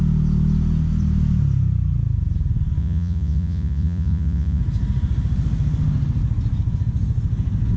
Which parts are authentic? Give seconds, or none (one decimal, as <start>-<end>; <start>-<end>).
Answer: 0.0-2.8; 4.6-7.8